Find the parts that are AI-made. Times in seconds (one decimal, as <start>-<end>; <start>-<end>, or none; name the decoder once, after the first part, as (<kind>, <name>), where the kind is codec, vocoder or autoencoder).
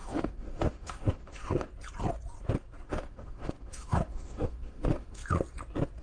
0.0-1.7 (autoencoder, DAC-VAE); 2.9-5.2